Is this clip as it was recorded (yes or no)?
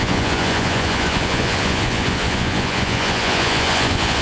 no